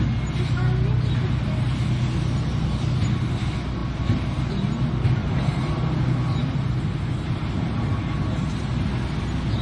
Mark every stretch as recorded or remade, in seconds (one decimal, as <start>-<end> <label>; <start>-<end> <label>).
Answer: 0.0-5.2 recorded; 5.2-6.0 remade; 6.0-6.4 recorded; 6.4-8.7 remade; 8.7-9.6 recorded